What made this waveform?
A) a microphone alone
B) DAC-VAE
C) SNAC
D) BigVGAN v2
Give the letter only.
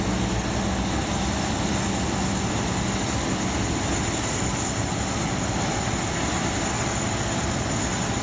A